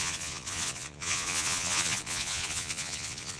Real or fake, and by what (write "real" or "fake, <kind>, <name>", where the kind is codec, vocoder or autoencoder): fake, vocoder, Vocos